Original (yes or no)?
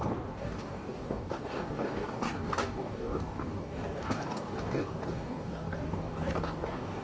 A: no